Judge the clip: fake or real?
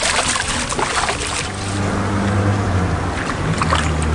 real